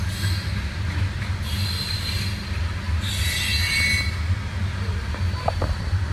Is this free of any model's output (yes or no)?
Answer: yes